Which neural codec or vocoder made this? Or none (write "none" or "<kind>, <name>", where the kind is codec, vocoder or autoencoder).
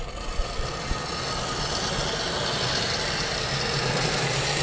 none